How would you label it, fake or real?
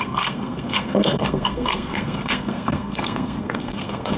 fake